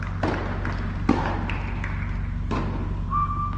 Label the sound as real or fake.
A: real